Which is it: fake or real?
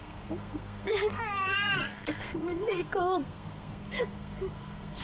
fake